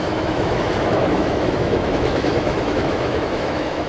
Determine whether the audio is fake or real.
fake